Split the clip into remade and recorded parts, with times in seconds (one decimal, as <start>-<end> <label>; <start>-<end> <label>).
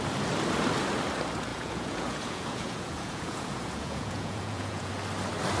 0.0-1.5 recorded; 1.5-4.9 remade; 4.9-5.6 recorded